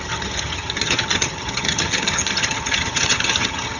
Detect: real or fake fake